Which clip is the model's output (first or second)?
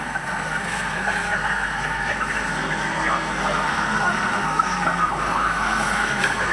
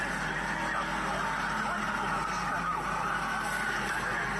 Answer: first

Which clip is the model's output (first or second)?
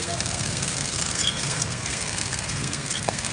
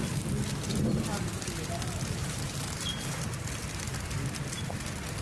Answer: first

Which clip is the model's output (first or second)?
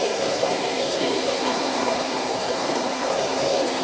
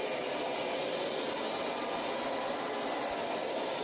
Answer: first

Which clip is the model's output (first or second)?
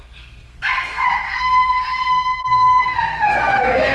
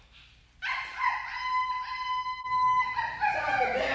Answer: first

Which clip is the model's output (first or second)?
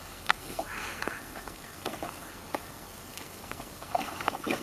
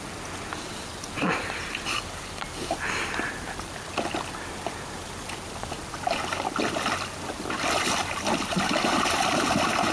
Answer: first